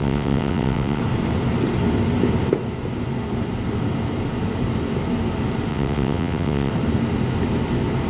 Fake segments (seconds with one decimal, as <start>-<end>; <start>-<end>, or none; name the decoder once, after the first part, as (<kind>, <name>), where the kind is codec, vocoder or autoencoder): 0.0-1.0 (vocoder, WaveNeXt); 5.7-6.7